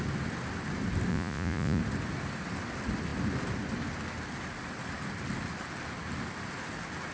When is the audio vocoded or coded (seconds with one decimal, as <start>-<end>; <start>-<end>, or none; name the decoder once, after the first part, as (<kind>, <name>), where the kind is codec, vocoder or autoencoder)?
1.1-1.8 (vocoder, Vocos)